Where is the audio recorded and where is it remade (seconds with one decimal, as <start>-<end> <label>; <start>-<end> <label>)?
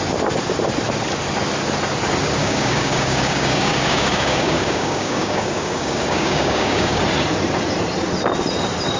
0.0-2.4 recorded; 2.4-7.0 remade; 7.0-9.0 recorded